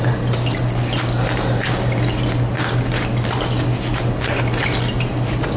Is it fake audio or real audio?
real